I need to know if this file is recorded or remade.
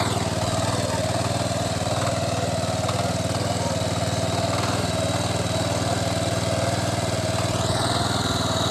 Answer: recorded